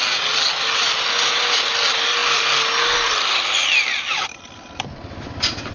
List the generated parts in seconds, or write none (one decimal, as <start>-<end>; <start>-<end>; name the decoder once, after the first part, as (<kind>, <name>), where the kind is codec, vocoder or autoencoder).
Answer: none